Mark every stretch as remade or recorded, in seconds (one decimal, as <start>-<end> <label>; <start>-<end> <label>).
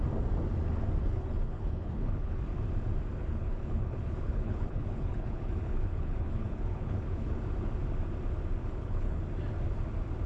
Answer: 0.0-1.0 recorded; 1.0-2.4 remade; 2.4-3.2 recorded; 3.2-7.4 remade; 7.4-8.6 recorded; 8.6-9.2 remade; 9.2-10.3 recorded